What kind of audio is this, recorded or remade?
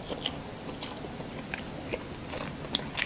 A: recorded